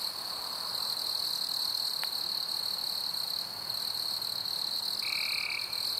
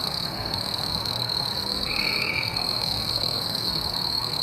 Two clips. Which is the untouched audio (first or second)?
first